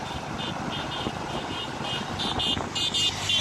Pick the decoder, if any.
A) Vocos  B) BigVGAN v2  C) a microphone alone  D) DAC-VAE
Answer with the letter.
C